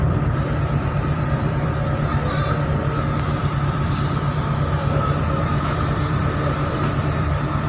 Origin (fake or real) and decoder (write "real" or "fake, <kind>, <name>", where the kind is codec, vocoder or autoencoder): fake, vocoder, BigVGAN v2